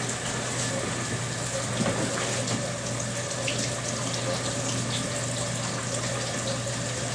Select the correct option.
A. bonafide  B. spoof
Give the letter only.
A